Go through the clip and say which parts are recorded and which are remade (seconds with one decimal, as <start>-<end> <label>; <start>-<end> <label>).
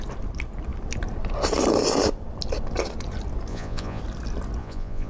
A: 0.0-3.5 recorded; 3.5-4.0 remade; 4.0-4.6 recorded; 4.6-5.1 remade